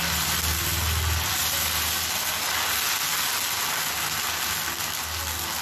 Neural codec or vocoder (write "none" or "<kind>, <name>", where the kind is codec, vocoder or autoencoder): none